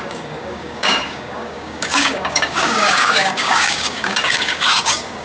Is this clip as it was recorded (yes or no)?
no